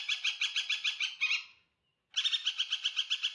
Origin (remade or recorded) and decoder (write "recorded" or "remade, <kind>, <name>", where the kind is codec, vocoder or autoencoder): recorded